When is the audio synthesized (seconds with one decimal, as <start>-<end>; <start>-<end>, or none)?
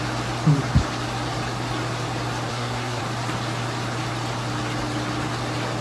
2.5-3.0